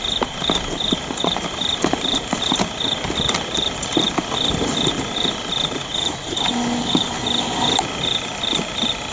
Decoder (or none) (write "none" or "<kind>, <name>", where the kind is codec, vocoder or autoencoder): none